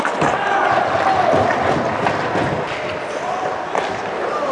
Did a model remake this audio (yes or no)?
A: no